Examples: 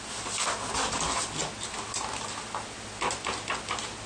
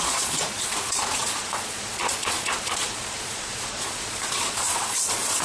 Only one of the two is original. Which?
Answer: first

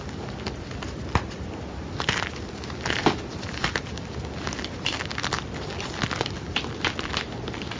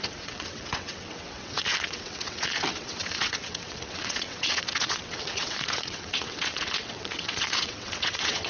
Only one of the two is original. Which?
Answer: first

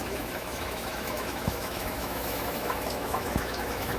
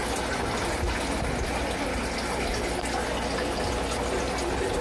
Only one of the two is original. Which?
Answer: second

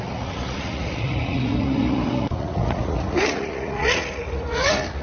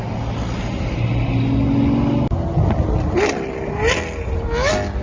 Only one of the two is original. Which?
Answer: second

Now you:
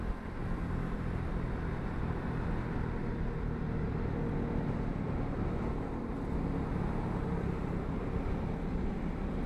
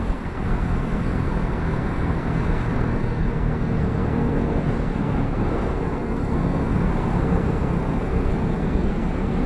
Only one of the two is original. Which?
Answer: first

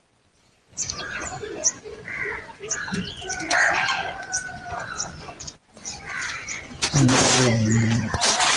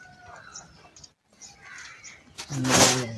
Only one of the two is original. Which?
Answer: second